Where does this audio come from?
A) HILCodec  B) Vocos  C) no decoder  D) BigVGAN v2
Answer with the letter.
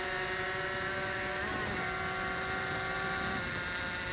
C